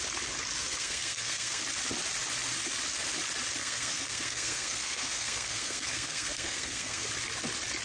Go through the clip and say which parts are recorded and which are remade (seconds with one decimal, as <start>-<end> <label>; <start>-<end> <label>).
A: 0.0-0.6 recorded; 0.6-1.6 remade; 1.6-3.6 recorded; 3.6-7.1 remade; 7.1-7.8 recorded